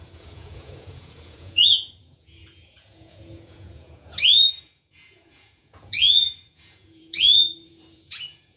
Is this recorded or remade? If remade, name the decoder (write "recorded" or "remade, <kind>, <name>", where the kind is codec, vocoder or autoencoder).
remade, vocoder, Vocos